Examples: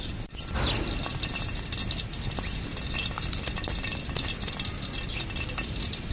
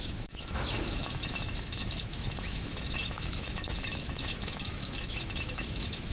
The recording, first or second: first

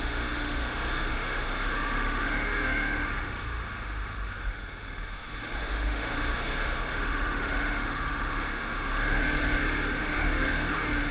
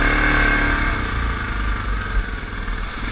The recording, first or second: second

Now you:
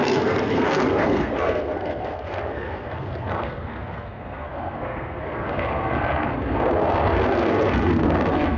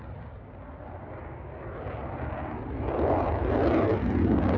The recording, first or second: second